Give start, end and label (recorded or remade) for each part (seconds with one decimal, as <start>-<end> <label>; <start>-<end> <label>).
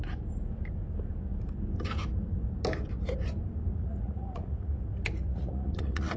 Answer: 0.0-3.7 recorded; 3.7-4.8 remade; 4.8-5.3 recorded; 5.3-6.2 remade